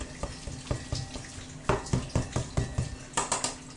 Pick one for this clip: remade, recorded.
recorded